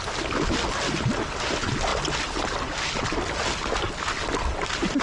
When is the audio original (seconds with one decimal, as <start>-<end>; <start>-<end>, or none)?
0.0-5.0